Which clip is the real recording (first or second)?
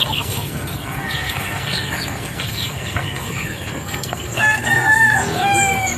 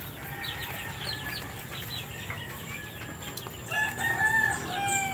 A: second